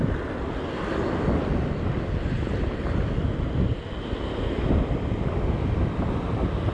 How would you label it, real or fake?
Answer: real